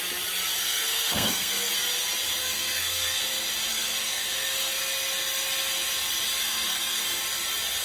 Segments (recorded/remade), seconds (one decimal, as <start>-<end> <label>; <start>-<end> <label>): 0.0-0.6 recorded; 0.6-1.7 remade; 1.7-2.4 recorded; 2.4-3.2 remade; 3.2-3.7 recorded; 3.7-4.8 remade; 4.8-6.4 recorded; 6.4-7.2 remade; 7.2-7.8 recorded

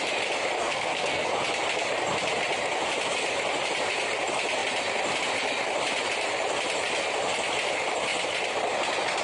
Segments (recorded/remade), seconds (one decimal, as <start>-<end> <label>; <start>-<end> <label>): 0.0-0.6 recorded; 0.6-1.3 remade; 1.3-9.2 recorded

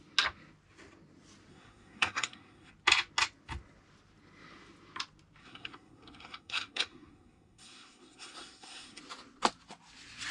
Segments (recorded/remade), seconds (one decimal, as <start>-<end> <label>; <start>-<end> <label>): 0.0-1.5 recorded; 1.5-2.7 remade; 2.7-5.4 recorded; 5.4-9.0 remade; 9.0-10.3 recorded

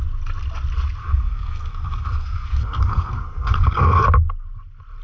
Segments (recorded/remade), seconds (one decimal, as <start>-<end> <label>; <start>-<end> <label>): 0.0-1.0 recorded; 1.0-4.0 remade; 4.0-5.0 recorded